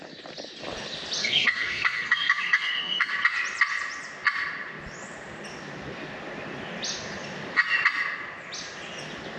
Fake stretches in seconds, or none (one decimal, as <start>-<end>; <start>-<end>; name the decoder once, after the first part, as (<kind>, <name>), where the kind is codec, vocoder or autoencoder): 1.2-3.1 (codec, SNAC)